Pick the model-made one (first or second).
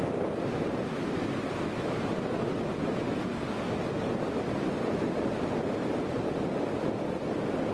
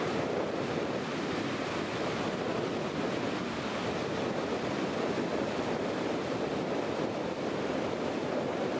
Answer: second